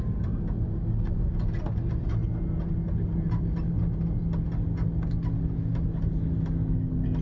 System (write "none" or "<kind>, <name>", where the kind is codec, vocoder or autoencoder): none